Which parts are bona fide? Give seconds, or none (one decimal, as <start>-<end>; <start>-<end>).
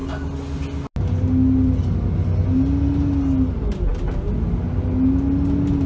0.0-5.9